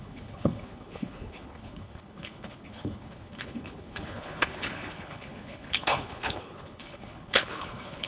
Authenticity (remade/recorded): remade